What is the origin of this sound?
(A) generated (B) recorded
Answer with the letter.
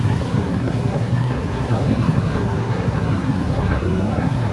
A